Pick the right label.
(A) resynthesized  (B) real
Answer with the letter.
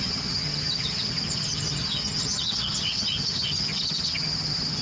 A